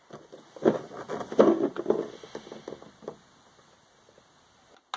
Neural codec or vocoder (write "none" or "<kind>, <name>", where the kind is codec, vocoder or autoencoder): none